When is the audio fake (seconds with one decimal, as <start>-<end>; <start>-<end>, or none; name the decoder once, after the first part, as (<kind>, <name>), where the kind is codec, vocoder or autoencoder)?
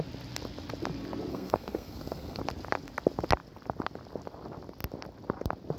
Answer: 1.3-2.4 (codec, SNAC)